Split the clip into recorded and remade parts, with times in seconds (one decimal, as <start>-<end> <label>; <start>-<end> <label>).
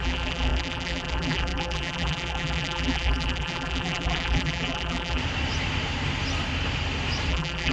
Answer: 0.0-5.2 remade; 5.2-7.3 recorded; 7.3-7.7 remade